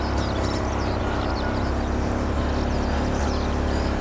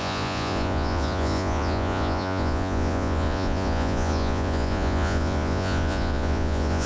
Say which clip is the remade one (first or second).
second